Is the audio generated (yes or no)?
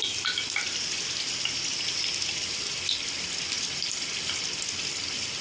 no